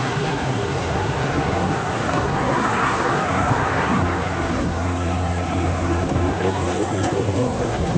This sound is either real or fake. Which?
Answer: fake